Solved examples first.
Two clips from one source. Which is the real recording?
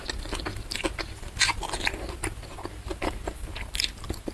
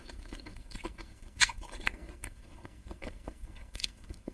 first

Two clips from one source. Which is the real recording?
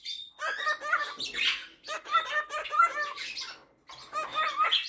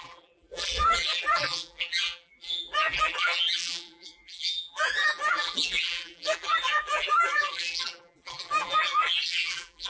first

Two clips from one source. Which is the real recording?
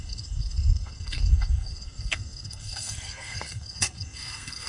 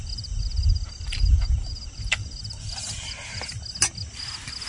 second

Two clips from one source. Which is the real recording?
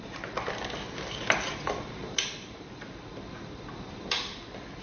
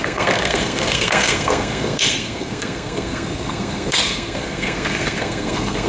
first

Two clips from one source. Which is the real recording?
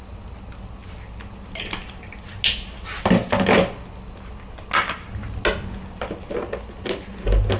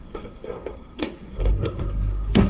first